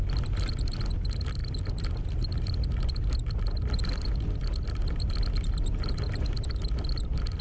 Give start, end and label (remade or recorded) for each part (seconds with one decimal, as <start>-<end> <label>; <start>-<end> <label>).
0.0-7.4 recorded